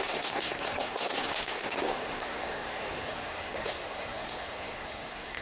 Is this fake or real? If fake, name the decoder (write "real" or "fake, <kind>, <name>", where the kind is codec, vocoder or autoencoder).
fake, codec, SNAC